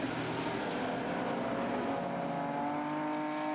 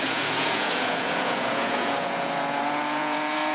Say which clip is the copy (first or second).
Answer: second